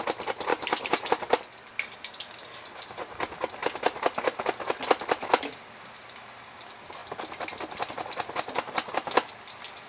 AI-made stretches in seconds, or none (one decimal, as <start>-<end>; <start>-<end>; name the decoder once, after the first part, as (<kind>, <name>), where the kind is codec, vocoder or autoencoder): 0.5-1.1 (vocoder, BigVGAN v2)